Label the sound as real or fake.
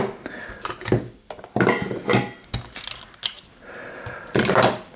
real